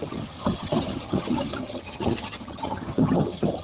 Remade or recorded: remade